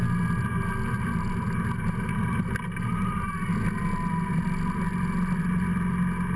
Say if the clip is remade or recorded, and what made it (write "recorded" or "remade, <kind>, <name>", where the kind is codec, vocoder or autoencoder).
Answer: recorded